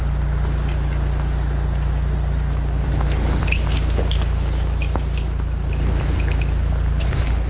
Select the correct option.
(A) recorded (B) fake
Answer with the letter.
A